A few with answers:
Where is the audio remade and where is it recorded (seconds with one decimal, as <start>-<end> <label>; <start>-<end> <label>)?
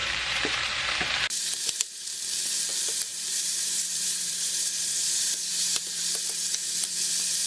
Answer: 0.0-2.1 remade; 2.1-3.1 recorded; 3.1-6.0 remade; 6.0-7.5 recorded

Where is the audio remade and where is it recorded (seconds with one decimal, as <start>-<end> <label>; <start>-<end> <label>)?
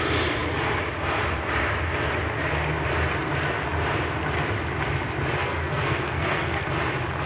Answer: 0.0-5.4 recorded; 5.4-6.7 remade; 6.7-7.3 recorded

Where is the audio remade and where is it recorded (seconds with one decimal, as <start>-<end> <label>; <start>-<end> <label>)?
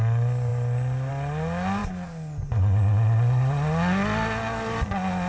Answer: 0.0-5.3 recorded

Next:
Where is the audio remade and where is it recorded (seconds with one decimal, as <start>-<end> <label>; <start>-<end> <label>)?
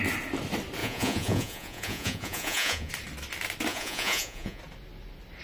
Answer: 0.0-0.8 recorded; 0.8-2.9 remade; 2.9-3.7 recorded; 3.7-4.6 remade; 4.6-5.4 recorded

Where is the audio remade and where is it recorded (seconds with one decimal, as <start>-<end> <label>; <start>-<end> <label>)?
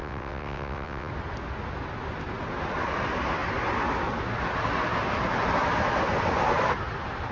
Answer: 0.0-1.1 remade; 1.1-7.3 recorded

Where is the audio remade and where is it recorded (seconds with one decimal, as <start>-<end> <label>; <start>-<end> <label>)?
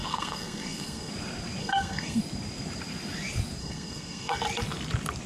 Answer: 0.0-1.1 remade; 1.1-1.6 recorded; 1.6-2.2 remade; 2.2-3.6 recorded; 3.6-4.4 remade; 4.4-5.3 recorded